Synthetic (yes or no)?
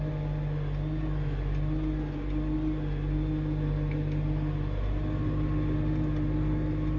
no